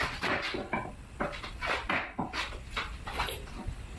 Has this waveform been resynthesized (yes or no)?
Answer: no